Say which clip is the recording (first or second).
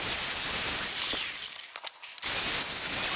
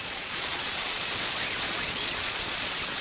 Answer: first